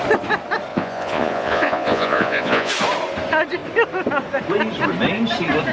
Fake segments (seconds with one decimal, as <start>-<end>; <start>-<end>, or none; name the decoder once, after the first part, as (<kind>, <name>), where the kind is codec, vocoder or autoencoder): 0.7-2.7 (vocoder, Vocos)